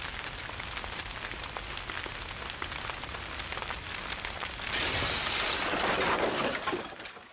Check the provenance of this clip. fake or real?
real